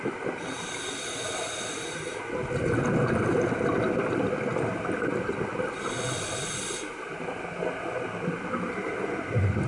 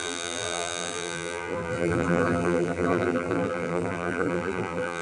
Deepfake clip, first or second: second